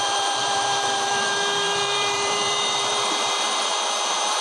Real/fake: fake